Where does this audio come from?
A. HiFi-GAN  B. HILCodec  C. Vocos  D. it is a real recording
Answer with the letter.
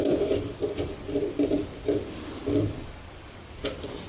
D